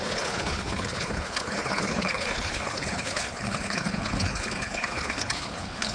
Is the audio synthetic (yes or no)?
yes